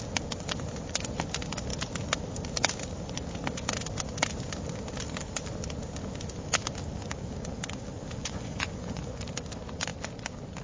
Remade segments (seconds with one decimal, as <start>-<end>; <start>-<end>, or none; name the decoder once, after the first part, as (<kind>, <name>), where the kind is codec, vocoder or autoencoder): 8.2-9.2 (vocoder, Vocos)